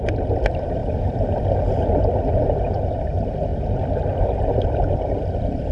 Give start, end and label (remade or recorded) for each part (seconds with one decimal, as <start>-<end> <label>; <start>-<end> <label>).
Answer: 0.0-5.7 remade